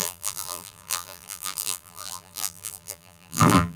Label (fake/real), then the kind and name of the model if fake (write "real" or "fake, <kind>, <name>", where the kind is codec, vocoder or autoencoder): fake, vocoder, BigVGAN v2